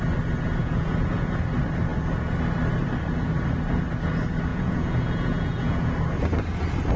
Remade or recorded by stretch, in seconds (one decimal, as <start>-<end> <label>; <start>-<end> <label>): 0.0-0.6 recorded; 0.6-1.4 remade; 1.4-4.5 recorded; 4.5-5.9 remade; 5.9-7.0 recorded